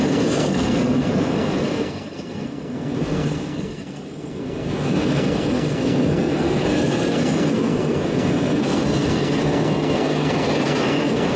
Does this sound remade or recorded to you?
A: remade